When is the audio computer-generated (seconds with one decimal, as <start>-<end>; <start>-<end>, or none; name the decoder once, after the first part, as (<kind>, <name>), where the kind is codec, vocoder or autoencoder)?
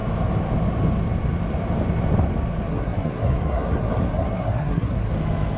2.7-5.1 (codec, SNAC)